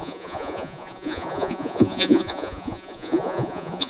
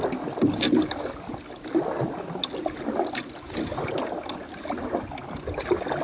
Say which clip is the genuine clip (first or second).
second